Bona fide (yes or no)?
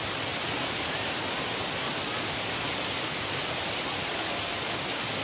yes